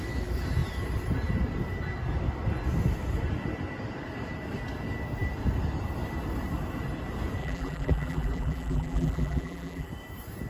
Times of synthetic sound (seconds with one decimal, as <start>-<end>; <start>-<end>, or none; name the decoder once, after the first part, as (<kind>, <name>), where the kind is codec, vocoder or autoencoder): 7.4-9.9 (vocoder, BigVGAN v2)